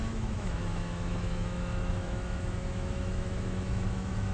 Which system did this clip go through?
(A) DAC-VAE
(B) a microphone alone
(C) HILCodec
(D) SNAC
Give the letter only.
A